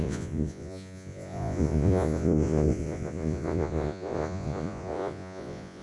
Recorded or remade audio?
remade